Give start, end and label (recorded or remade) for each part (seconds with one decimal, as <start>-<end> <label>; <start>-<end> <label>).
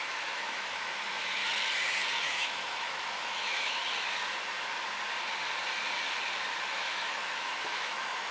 0.0-1.4 remade; 1.4-2.2 recorded; 2.2-3.8 remade; 3.8-6.7 recorded; 6.7-8.3 remade